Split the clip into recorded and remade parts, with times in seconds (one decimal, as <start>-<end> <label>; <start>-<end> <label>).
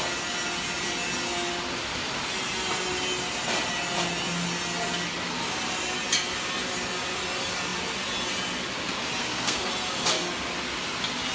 0.0-9.2 recorded; 9.2-9.7 remade; 9.7-11.3 recorded